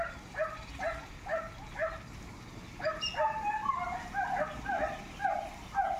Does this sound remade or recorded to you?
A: recorded